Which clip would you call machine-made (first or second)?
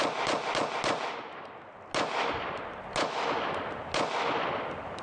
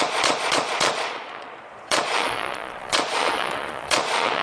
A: second